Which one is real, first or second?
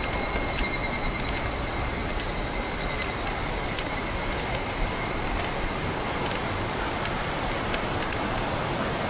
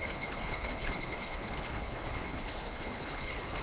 first